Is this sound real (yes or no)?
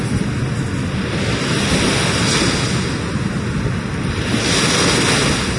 yes